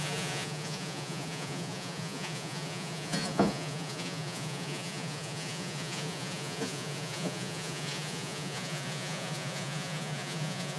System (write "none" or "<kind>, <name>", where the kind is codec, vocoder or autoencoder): vocoder, Vocos